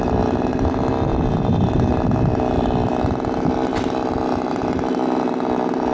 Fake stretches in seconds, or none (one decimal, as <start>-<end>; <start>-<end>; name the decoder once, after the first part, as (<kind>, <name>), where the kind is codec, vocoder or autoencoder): none